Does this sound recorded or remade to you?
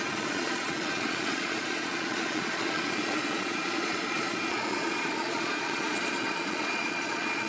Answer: remade